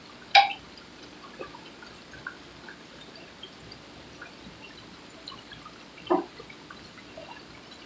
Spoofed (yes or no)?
no